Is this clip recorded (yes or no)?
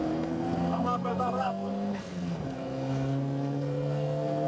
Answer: no